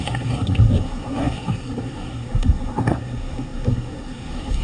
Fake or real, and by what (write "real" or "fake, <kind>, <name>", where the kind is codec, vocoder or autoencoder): fake, codec, SNAC